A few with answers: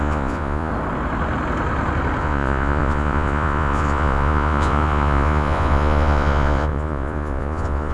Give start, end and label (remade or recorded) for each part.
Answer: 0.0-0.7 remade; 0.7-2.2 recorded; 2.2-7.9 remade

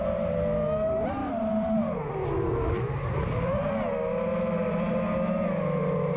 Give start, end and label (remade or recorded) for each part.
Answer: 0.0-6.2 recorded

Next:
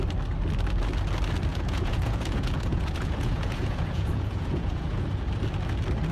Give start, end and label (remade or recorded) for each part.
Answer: 0.0-1.5 recorded; 1.5-5.2 remade; 5.2-6.1 recorded

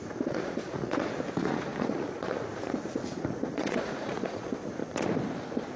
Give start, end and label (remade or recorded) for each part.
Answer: 0.0-4.8 remade; 4.8-5.8 recorded

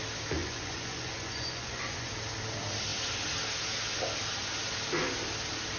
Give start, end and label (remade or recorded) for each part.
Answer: 0.0-0.4 recorded; 0.4-2.1 remade; 2.1-5.8 recorded

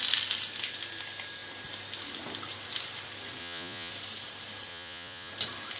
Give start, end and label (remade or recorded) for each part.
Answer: 0.0-3.4 recorded; 3.4-3.9 remade; 3.9-4.7 recorded; 4.7-5.3 remade; 5.3-5.8 recorded

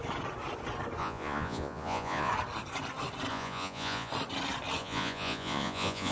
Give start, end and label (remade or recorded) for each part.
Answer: 0.0-1.0 recorded; 1.0-2.3 remade; 2.3-3.3 recorded; 3.3-4.1 remade; 4.1-4.8 recorded; 4.8-6.1 remade

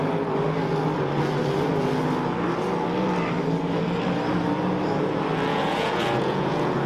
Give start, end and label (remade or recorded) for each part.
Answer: 0.0-5.5 recorded; 5.5-6.9 remade